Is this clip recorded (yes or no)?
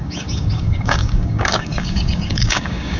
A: no